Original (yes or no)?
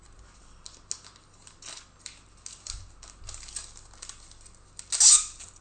yes